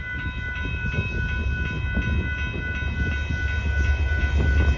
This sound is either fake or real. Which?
real